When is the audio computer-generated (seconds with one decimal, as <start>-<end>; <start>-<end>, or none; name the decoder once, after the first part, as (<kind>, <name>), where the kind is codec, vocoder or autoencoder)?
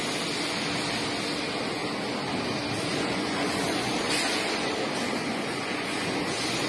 2.9-4.7 (vocoder, Vocos); 5.2-6.7